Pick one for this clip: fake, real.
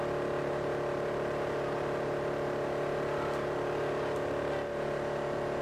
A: real